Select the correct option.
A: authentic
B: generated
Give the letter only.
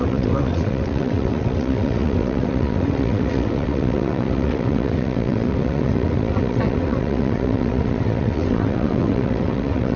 B